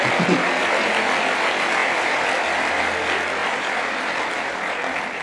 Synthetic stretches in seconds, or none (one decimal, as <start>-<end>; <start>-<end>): 1.8-2.8; 3.4-5.2